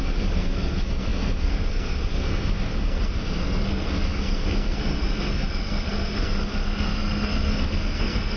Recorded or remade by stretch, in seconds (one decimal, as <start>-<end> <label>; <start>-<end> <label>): 0.0-8.4 remade